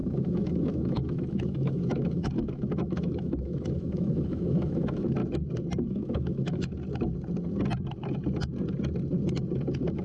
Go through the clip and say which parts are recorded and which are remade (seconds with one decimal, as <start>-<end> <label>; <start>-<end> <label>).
0.0-5.2 remade; 5.2-5.9 recorded; 5.9-6.7 remade; 6.7-9.6 recorded; 9.6-10.0 remade